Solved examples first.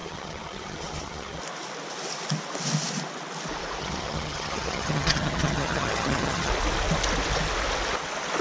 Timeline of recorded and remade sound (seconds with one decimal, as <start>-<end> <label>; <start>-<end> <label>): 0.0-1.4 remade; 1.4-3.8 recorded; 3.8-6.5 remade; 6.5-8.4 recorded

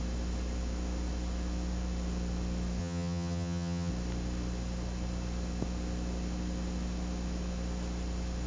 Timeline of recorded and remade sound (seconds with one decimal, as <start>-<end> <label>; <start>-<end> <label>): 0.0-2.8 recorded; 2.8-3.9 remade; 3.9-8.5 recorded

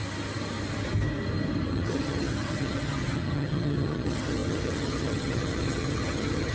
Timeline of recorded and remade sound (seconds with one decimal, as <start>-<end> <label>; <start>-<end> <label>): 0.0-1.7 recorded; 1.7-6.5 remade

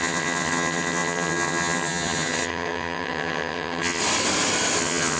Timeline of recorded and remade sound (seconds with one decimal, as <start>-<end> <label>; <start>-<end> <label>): 0.0-4.0 remade; 4.0-4.8 recorded; 4.8-5.2 remade